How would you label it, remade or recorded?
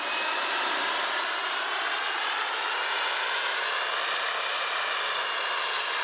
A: recorded